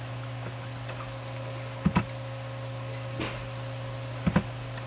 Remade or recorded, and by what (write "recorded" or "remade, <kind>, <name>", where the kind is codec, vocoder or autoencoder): recorded